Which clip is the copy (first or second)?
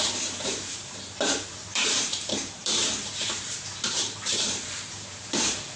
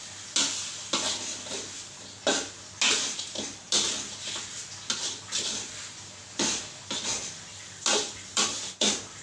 first